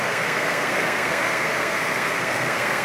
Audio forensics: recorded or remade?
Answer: remade